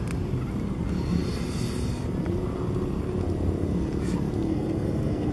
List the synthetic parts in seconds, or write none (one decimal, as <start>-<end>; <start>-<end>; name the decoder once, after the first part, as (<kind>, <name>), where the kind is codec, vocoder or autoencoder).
4.5-5.3 (codec, SNAC)